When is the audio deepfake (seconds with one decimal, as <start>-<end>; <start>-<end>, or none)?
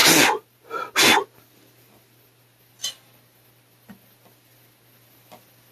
none